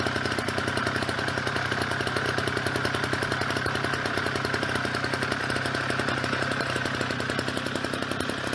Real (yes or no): yes